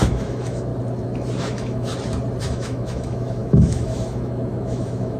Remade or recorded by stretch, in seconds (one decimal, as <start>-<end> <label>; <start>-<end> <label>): 0.0-0.7 remade; 0.7-1.4 recorded; 1.4-1.9 remade; 1.9-2.4 recorded; 2.4-5.2 remade